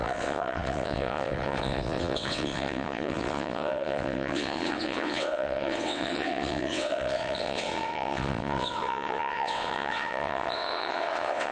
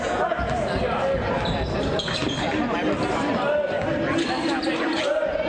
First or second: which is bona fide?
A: second